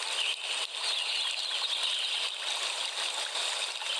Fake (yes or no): no